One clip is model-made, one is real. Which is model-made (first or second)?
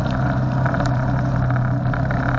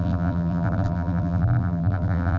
second